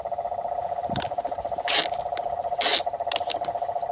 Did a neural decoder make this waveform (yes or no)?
no